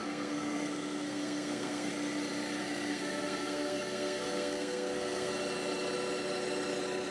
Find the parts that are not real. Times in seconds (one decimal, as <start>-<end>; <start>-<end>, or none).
0.0-1.9; 2.6-5.3